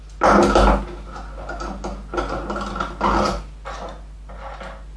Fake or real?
real